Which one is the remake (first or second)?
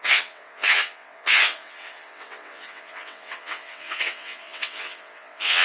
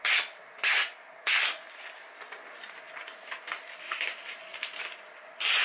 first